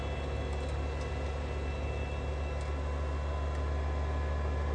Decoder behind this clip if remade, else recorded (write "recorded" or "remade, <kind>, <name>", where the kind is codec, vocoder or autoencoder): recorded